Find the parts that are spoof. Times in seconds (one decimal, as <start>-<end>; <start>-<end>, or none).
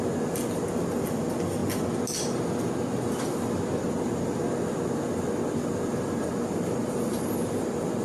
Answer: 5.9-7.3